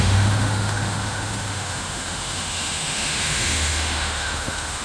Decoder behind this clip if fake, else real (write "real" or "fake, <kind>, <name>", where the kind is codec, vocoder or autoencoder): fake, autoencoder, DAC-VAE